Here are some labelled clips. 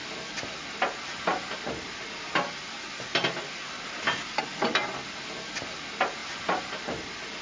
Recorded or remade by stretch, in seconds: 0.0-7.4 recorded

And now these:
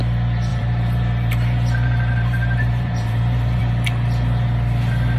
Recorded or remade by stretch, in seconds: 0.0-0.5 recorded; 0.5-3.6 remade; 3.6-5.2 recorded

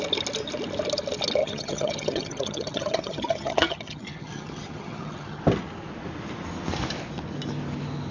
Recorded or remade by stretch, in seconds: 0.0-1.4 recorded; 1.4-5.4 remade; 5.4-8.1 recorded

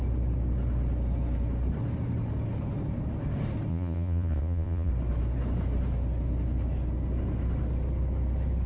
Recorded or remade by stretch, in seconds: 0.0-3.7 recorded; 3.7-4.9 remade; 4.9-8.7 recorded

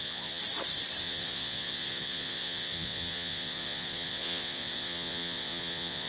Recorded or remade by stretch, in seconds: 0.0-0.4 remade; 0.4-1.0 recorded; 1.0-6.1 remade